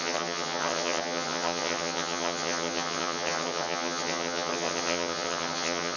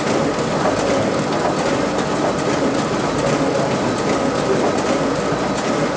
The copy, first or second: first